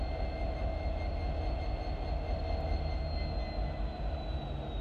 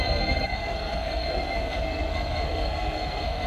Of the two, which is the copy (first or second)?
second